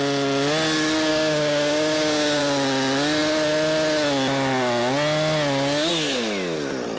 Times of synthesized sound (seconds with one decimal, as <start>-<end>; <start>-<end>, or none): 1.1-2.4